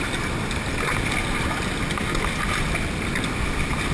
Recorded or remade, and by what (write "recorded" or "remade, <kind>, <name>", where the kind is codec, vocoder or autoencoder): recorded